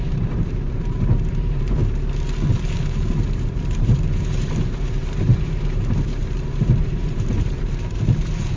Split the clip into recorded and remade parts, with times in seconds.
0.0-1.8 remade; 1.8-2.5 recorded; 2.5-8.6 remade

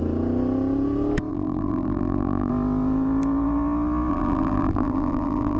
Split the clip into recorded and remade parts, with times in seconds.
0.0-1.3 recorded; 1.3-2.5 remade; 2.5-4.1 recorded; 4.1-5.6 remade